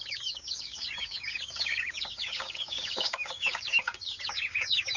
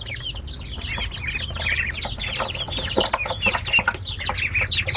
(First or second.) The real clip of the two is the second